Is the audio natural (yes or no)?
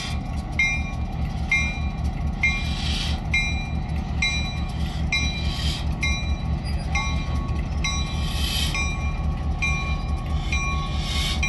yes